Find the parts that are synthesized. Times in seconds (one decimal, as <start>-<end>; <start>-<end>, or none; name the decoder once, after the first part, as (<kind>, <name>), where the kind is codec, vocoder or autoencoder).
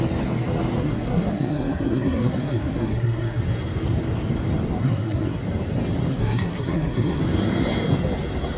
0.8-3.4 (codec, SNAC); 4.8-5.4; 6.1-7.2